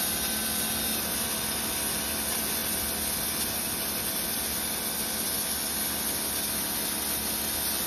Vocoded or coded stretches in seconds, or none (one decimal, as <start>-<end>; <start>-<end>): none